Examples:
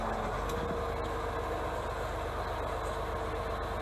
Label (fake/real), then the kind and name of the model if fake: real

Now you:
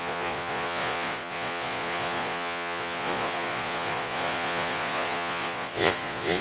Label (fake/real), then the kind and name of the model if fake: fake, vocoder, Vocos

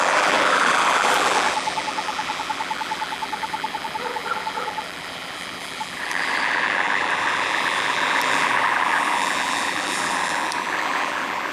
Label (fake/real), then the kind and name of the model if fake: fake, vocoder, BigVGAN v2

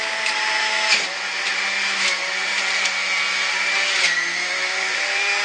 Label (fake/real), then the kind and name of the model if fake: fake, vocoder, BigVGAN v2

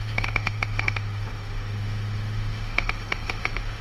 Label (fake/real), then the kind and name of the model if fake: fake, autoencoder, DAC-VAE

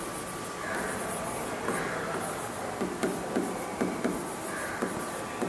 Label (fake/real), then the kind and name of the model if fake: real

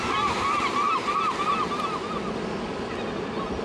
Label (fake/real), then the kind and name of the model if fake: real